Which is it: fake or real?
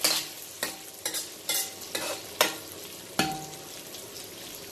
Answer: real